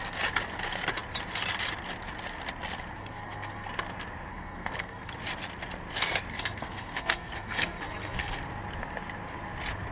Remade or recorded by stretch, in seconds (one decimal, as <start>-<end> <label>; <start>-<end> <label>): 0.0-3.0 recorded; 3.0-3.7 remade; 3.7-4.3 recorded; 4.3-5.1 remade; 5.1-6.3 recorded; 6.3-8.4 remade; 8.4-9.9 recorded